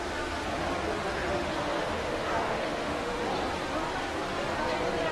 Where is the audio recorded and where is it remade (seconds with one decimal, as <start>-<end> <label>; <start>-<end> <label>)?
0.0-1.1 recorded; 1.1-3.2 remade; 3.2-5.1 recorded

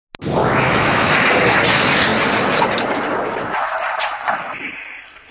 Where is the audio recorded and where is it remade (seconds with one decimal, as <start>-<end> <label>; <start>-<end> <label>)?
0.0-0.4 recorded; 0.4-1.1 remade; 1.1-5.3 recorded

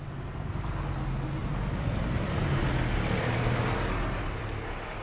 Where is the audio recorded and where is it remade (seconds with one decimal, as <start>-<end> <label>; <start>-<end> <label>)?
0.0-5.0 recorded

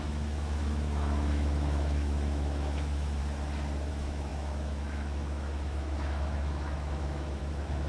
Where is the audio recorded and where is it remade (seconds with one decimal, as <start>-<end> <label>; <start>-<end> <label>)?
0.0-3.2 remade; 3.2-3.9 recorded; 3.9-7.9 remade

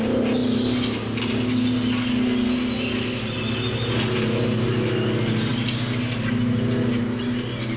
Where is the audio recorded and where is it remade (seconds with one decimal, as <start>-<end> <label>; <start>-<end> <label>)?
0.0-7.8 recorded

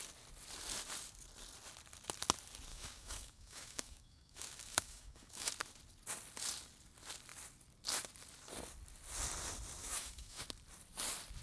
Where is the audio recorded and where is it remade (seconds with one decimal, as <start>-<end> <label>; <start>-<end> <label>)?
0.0-2.7 recorded; 2.7-5.5 remade; 5.5-9.8 recorded; 9.8-10.4 remade; 10.4-11.4 recorded

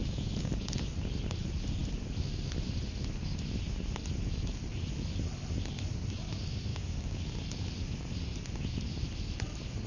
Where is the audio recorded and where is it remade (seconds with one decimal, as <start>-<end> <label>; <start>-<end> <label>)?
0.0-0.5 remade; 0.5-6.7 recorded; 6.7-7.3 remade; 7.3-9.9 recorded